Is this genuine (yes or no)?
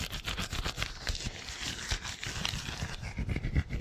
yes